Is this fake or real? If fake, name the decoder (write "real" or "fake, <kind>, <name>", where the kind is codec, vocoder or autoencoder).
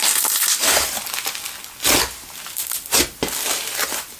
real